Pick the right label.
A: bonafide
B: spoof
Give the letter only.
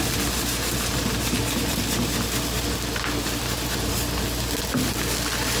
A